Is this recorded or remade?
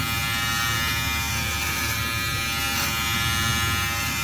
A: recorded